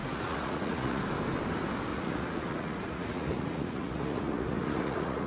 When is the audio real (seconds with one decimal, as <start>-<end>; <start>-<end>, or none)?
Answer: 1.0-1.9